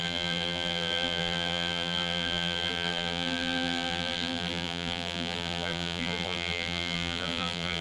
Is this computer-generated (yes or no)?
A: yes